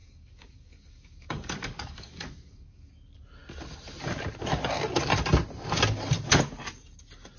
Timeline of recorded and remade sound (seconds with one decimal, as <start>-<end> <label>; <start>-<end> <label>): 0.0-2.9 remade; 2.9-7.4 recorded